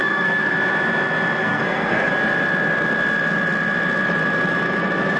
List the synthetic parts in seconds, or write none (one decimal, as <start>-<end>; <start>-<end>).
0.0-0.5; 1.4-2.1